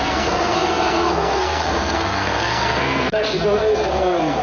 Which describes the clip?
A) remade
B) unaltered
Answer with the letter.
A